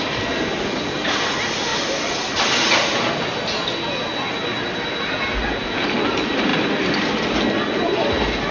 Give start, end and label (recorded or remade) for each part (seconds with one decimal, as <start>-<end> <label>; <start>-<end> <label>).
0.0-8.5 recorded